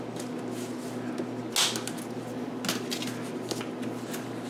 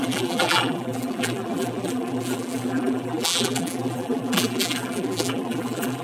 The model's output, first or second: second